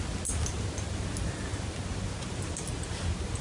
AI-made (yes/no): no